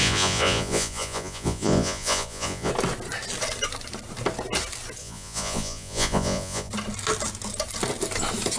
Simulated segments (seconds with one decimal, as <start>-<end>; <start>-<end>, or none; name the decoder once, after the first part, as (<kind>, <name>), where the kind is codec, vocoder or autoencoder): 0.0-2.7 (vocoder, Vocos); 5.0-6.7